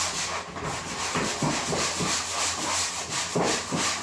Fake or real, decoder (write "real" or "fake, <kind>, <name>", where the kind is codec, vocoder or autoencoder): real